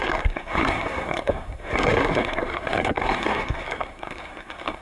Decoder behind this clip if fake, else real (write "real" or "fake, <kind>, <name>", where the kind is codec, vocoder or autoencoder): fake, codec, SNAC